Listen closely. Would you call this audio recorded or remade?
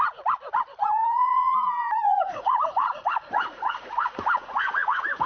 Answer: remade